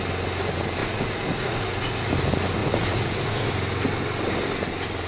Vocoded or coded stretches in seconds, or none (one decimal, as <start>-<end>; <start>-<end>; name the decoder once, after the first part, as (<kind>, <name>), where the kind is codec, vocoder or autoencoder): 0.8-2.1 (vocoder, Vocos); 2.6-3.5